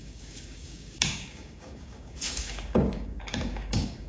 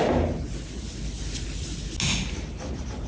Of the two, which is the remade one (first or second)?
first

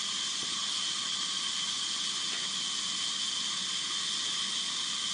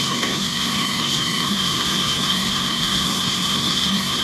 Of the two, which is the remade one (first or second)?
second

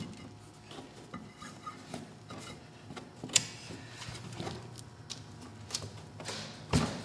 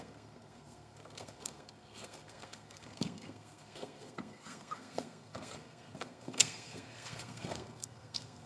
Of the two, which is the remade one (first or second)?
second